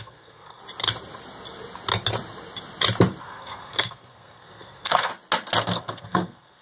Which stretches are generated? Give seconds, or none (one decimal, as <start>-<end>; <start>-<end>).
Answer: 0.0-0.6; 3.2-5.1; 5.6-6.6